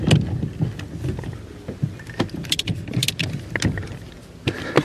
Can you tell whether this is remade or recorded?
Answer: recorded